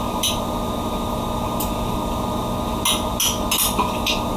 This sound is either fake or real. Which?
real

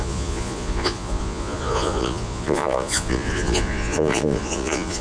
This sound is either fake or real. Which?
fake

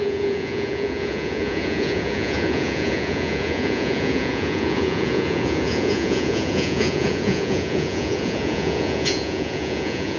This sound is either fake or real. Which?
fake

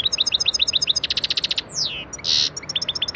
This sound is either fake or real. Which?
real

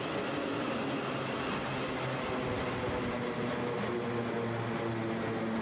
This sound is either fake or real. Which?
real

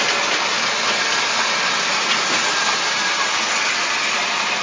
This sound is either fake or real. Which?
real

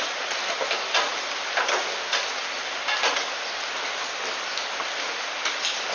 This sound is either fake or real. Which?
real